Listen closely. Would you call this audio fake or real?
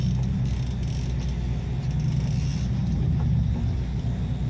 real